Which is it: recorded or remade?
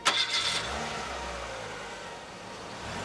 recorded